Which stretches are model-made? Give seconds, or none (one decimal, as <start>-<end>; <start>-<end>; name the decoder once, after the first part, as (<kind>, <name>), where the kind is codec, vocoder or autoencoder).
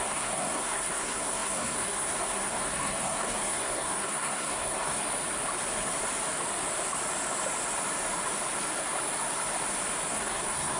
0.0-5.0 (codec, SNAC); 10.1-10.8